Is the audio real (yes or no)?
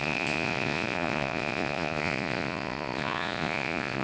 no